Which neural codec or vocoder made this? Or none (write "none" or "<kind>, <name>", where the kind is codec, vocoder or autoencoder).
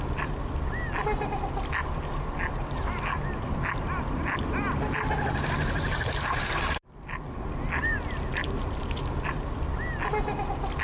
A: none